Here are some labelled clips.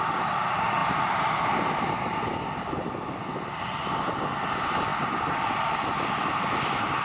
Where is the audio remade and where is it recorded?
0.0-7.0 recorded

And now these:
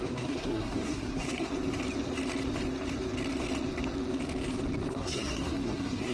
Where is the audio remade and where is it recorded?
0.0-1.5 remade; 1.5-4.9 recorded; 4.9-6.1 remade

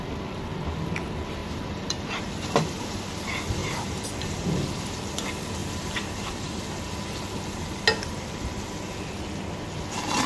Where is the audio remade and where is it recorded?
0.0-1.4 recorded; 1.4-3.0 remade; 3.0-3.6 recorded; 3.6-4.9 remade; 4.9-5.6 recorded; 5.6-7.0 remade; 7.0-10.3 recorded

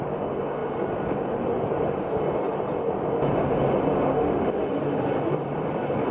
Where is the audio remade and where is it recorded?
0.0-4.2 recorded; 4.2-4.8 remade; 4.8-6.1 recorded

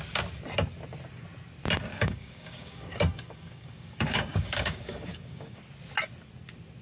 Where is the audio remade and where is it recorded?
0.0-1.9 recorded; 1.9-5.6 remade; 5.6-6.8 recorded

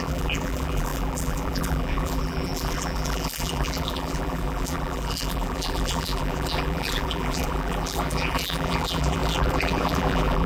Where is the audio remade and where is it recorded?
0.0-10.5 remade

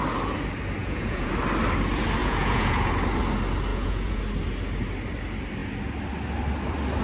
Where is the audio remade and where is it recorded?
0.0-0.8 recorded; 0.8-1.3 remade; 1.3-2.2 recorded; 2.2-2.9 remade; 2.9-3.7 recorded; 3.7-4.2 remade; 4.2-7.0 recorded